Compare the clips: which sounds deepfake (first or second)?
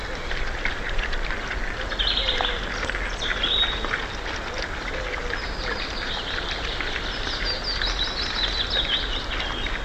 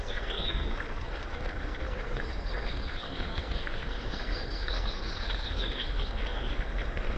second